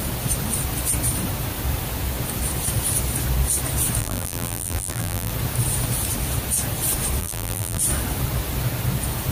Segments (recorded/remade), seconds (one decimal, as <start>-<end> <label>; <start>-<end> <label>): 0.0-4.0 recorded; 4.0-5.3 remade; 5.3-7.2 recorded; 7.2-7.8 remade; 7.8-9.3 recorded